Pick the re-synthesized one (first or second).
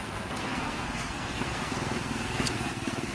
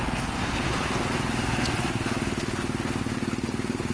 first